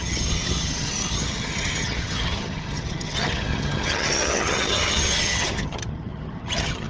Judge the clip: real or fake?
fake